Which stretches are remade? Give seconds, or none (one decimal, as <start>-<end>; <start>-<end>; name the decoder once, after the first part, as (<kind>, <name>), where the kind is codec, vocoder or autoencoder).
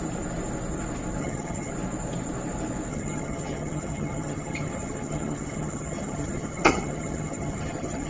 1.2-1.7 (vocoder, HiFi-GAN); 2.9-8.1